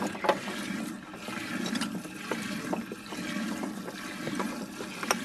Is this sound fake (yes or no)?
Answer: no